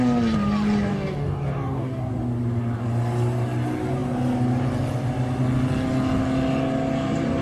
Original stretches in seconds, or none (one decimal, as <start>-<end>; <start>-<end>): 0.0-0.9; 2.1-7.4